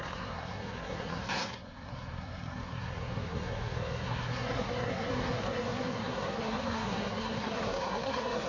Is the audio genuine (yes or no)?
no